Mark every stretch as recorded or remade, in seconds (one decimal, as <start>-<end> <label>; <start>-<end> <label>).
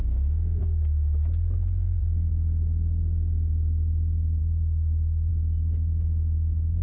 0.0-0.6 remade; 0.6-4.4 recorded; 4.4-5.3 remade; 5.3-6.8 recorded